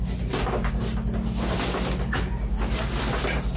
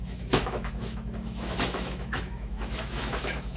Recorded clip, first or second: first